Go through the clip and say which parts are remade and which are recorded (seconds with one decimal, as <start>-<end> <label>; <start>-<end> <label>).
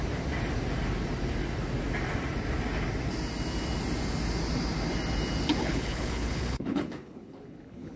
0.0-5.6 recorded; 5.6-8.0 remade